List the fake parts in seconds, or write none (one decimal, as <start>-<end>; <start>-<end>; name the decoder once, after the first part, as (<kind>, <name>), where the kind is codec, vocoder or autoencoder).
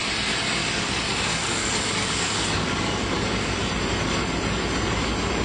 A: 0.6-3.7 (codec, DAC)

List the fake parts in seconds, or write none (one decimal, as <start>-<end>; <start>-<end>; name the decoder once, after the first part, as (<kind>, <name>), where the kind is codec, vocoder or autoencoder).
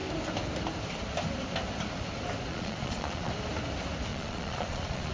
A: 2.5-3.3 (vocoder, Vocos); 4.1-5.1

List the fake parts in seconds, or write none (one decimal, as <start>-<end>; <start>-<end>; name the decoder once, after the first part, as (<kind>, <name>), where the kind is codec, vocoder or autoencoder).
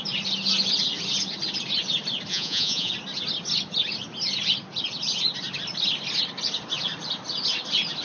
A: 2.3-2.9 (vocoder, Vocos)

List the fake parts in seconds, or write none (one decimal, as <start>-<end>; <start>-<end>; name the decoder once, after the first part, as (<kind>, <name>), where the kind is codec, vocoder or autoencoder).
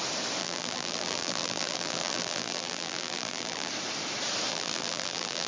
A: 0.4-3.7 (vocoder, BigVGAN v2); 4.5-5.5